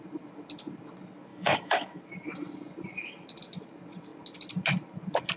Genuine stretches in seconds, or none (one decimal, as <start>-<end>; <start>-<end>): 0.0-1.3; 2.0-5.4